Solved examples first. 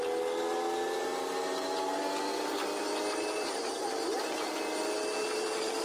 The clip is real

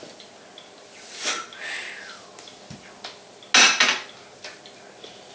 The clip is real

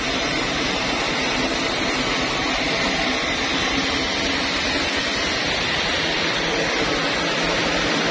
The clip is real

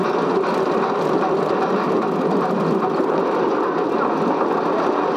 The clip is real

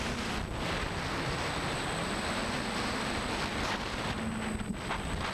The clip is real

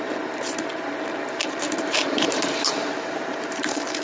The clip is fake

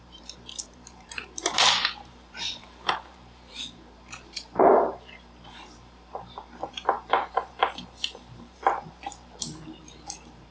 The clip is fake